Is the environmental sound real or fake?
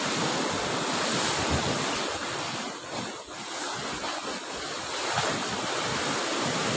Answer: real